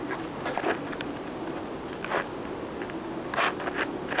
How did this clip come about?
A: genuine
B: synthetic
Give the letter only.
A